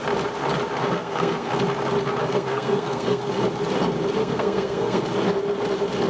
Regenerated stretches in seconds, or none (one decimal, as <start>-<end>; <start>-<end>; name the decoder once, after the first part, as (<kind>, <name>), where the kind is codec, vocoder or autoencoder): 0.8-1.5 (codec, SNAC); 2.2-3.2; 4.2-5.0